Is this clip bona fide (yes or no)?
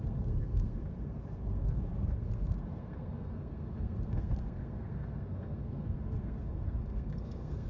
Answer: no